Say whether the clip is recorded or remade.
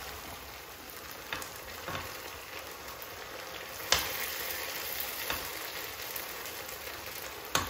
recorded